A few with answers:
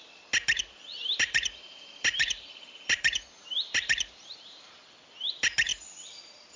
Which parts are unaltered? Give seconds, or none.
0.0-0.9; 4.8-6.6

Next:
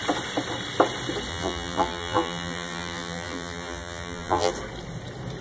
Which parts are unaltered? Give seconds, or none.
0.0-1.3; 4.5-5.4

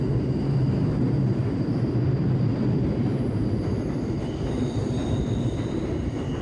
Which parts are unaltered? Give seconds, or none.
0.0-1.4; 3.7-5.0

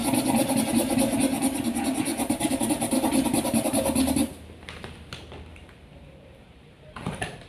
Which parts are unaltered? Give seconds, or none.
0.0-2.1; 2.6-5.5

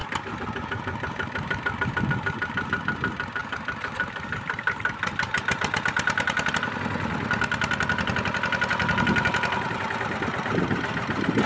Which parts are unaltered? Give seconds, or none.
2.1-3.4; 6.5-11.5

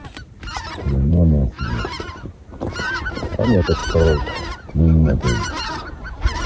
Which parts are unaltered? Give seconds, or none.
3.8-4.7

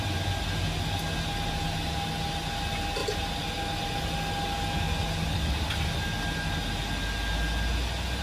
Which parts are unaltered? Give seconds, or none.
0.0-8.2

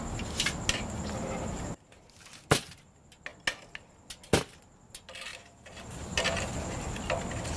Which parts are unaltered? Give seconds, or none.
0.0-5.3; 6.5-7.6